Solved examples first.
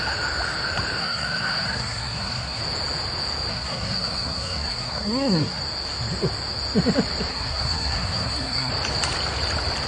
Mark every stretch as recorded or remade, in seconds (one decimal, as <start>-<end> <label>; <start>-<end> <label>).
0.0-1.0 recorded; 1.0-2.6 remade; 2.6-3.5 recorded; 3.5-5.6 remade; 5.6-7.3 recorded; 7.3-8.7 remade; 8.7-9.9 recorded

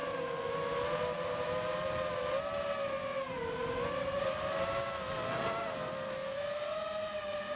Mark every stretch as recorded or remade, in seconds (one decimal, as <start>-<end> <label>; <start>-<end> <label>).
0.0-7.6 recorded

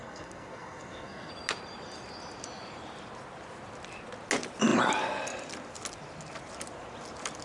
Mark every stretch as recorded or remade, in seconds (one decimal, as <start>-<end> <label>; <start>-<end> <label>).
0.0-1.3 remade; 1.3-7.4 recorded